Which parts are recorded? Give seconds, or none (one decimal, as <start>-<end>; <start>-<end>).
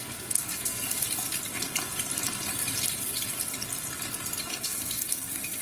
1.0-4.4